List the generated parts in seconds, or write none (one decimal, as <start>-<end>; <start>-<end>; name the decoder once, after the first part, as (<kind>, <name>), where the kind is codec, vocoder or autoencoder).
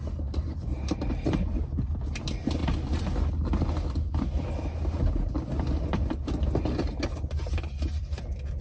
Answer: none